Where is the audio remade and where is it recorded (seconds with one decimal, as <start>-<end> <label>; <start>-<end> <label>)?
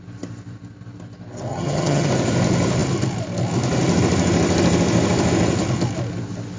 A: 0.0-1.5 recorded; 1.5-2.1 remade; 2.1-6.6 recorded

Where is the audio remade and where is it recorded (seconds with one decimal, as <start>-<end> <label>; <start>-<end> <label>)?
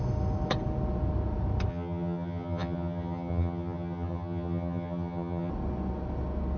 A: 0.0-1.7 recorded; 1.7-5.5 remade; 5.5-6.6 recorded